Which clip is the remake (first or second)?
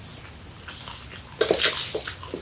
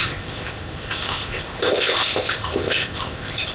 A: second